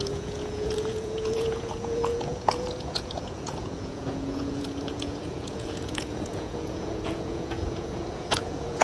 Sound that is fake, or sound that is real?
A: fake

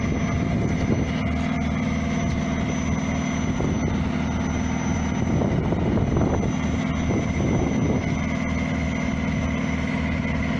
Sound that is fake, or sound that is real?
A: real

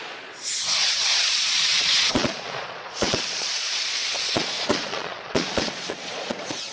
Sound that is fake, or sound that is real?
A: fake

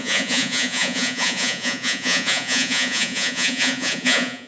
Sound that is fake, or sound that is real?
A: fake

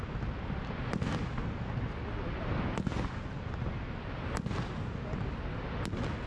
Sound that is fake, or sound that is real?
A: real